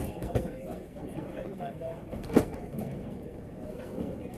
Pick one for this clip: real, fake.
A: fake